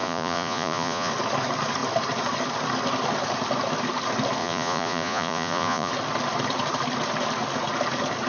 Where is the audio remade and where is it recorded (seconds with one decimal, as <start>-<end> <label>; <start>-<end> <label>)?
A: 0.0-1.1 remade; 1.1-4.4 recorded; 4.4-5.9 remade; 5.9-8.3 recorded

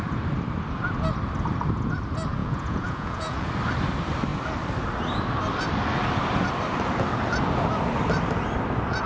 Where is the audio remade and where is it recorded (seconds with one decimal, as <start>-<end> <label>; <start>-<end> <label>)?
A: 0.0-2.4 recorded; 2.4-3.5 remade; 3.5-9.1 recorded

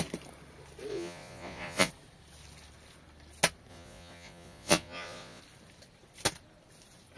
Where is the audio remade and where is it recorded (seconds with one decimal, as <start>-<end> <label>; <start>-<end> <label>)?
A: 0.0-0.9 recorded; 0.9-1.9 remade; 1.9-3.7 recorded; 3.7-5.4 remade; 5.4-7.2 recorded

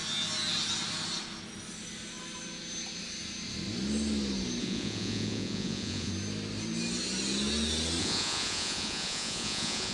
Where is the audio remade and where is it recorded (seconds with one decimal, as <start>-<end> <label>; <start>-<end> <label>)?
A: 0.0-4.6 recorded; 4.6-6.1 remade; 6.1-8.0 recorded; 8.0-9.9 remade

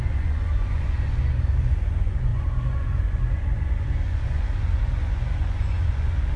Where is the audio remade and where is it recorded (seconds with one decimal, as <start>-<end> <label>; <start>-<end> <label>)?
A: 0.0-6.4 remade

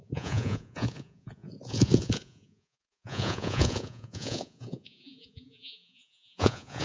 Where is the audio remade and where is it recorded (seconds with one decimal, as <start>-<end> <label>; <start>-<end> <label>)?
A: 0.0-6.8 remade